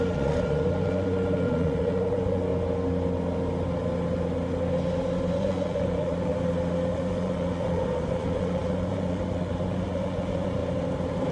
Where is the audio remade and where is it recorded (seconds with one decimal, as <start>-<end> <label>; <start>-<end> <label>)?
0.0-2.5 remade; 2.5-5.4 recorded; 5.4-6.3 remade; 6.3-6.9 recorded; 6.9-10.6 remade; 10.6-11.3 recorded